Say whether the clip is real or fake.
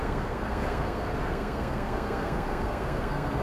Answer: fake